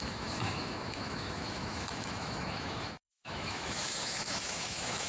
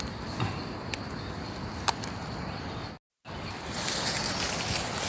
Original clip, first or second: second